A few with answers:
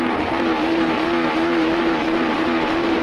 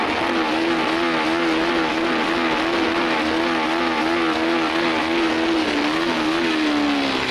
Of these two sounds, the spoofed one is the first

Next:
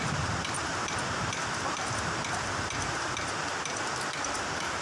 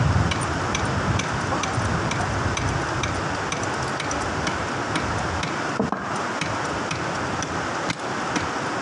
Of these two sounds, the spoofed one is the first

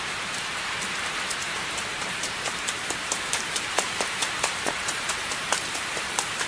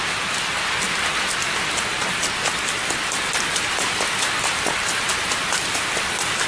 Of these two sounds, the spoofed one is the first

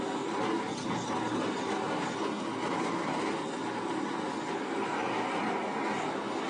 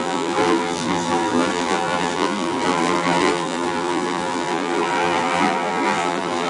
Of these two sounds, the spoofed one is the second